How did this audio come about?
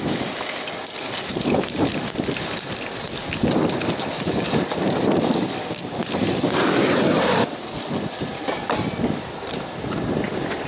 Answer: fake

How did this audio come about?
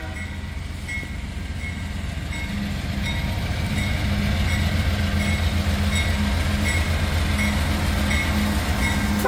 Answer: real